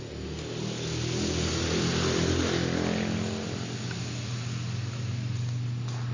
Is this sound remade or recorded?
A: recorded